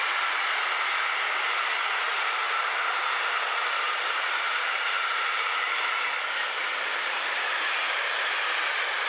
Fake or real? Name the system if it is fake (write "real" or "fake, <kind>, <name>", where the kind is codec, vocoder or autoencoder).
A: real